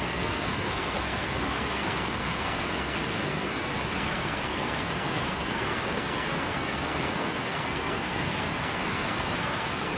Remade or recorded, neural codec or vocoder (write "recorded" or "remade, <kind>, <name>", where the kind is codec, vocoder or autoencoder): remade, codec, SNAC